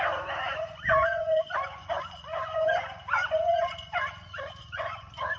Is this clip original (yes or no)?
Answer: no